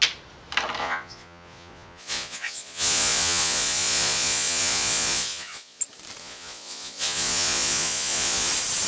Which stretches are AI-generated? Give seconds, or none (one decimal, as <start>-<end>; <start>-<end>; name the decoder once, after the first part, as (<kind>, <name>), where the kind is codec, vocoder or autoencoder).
0.8-5.8 (vocoder, Vocos); 6.2-8.5